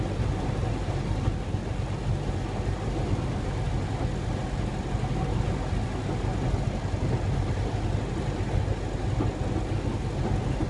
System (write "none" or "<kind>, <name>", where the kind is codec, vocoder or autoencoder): none